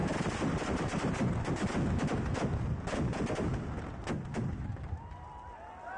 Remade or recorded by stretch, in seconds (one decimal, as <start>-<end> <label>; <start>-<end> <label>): 0.0-1.1 remade; 1.1-6.0 recorded